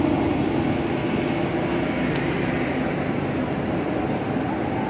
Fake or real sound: real